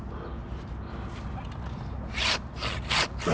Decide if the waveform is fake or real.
real